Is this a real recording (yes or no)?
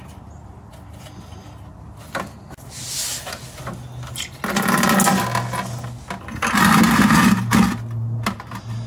yes